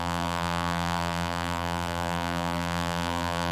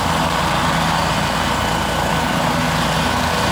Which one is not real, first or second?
first